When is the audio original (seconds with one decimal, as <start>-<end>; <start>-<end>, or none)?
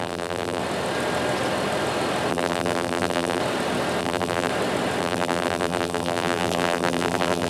0.6-2.3; 3.4-4.0; 4.5-5.0